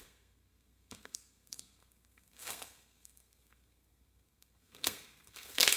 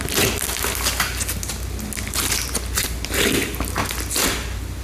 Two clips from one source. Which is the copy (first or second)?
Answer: first